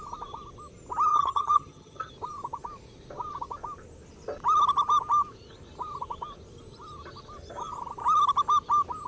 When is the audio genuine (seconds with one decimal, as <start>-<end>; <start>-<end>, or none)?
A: 0.0-1.1; 2.1-9.1